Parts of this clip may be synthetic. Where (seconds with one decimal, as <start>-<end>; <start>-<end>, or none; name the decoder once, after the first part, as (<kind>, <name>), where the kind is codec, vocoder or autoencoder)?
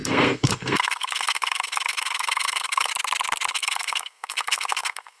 0.0-2.9 (codec, SNAC); 3.5-5.2